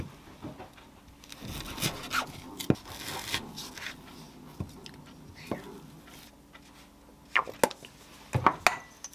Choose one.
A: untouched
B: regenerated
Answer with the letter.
A